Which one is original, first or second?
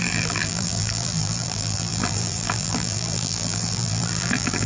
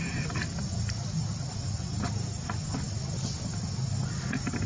second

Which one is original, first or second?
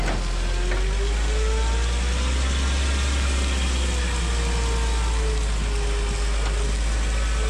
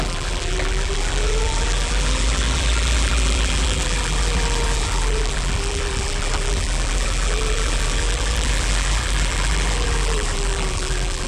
first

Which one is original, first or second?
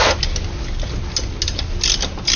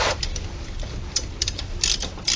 first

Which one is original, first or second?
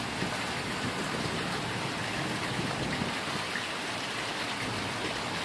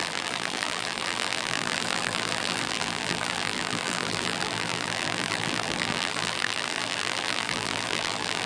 first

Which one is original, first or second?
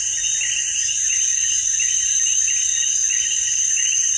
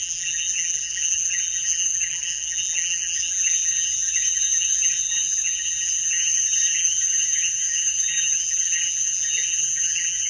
first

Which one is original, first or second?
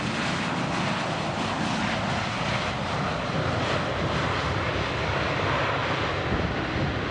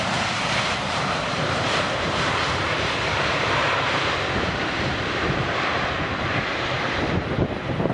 first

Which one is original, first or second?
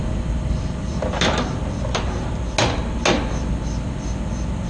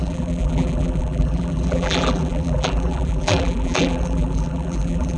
first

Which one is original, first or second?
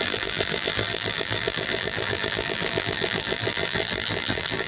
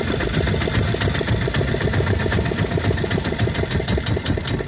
second